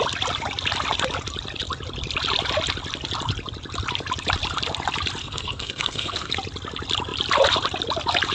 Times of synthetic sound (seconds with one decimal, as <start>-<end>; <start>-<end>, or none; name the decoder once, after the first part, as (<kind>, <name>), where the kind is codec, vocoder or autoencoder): 5.2-6.3 (codec, SNAC)